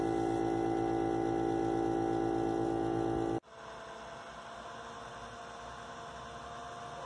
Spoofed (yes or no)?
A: no